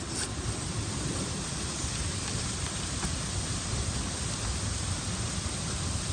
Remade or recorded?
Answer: recorded